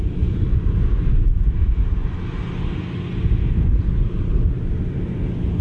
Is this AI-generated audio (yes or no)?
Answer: no